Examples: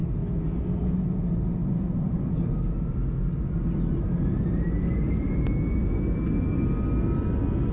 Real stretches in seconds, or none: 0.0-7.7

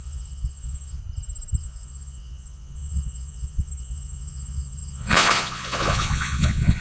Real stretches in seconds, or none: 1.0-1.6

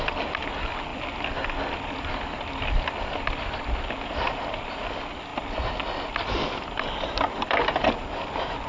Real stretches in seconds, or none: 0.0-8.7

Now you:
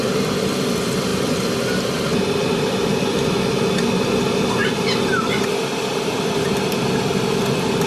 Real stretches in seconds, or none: 0.0-7.9

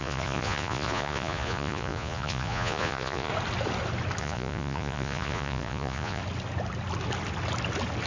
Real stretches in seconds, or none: 3.3-4.2; 6.2-8.1

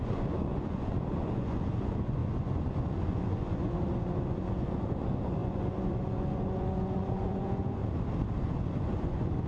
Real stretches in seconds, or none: 7.8-8.4

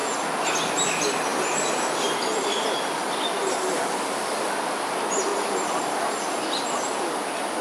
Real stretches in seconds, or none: 0.0-7.6